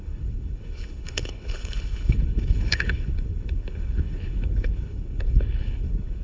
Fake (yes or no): yes